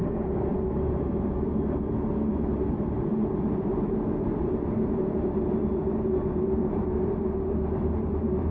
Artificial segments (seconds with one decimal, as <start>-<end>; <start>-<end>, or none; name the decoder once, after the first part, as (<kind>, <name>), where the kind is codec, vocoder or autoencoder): 0.0-8.5 (vocoder, BigVGAN v2)